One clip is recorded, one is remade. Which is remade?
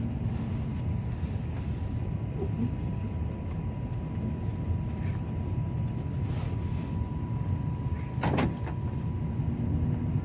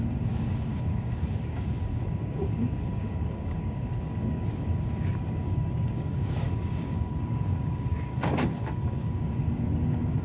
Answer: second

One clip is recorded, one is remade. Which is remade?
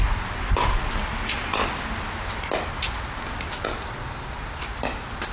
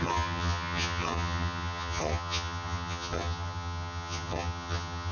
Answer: second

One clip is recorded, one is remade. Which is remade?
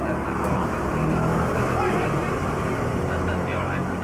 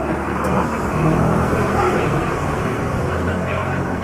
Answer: second